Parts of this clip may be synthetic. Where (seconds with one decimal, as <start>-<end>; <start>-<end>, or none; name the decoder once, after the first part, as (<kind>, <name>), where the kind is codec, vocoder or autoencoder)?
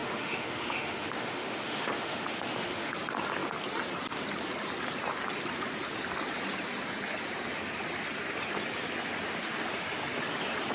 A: 0.0-2.9 (autoencoder, DAC-VAE)